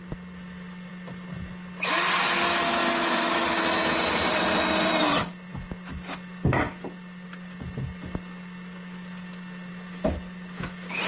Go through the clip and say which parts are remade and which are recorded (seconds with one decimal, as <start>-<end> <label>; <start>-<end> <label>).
0.0-11.1 recorded